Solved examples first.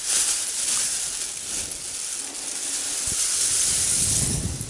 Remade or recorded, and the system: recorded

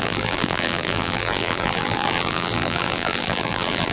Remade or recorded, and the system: remade, vocoder, BigVGAN v2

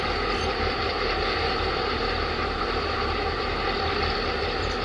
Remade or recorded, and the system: remade, vocoder, BigVGAN v2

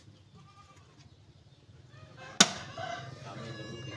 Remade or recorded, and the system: recorded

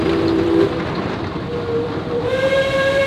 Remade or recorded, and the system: remade, vocoder, BigVGAN v2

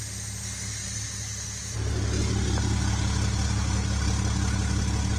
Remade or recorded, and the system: recorded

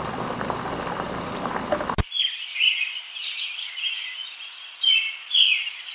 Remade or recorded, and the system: remade, vocoder, BigVGAN v2